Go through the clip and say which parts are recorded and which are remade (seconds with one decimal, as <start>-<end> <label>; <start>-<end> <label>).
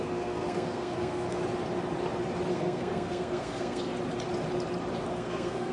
0.0-1.4 remade; 1.4-2.5 recorded; 2.5-3.9 remade; 3.9-5.1 recorded; 5.1-5.7 remade